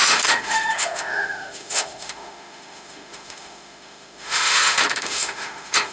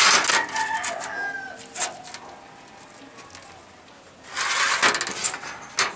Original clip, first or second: second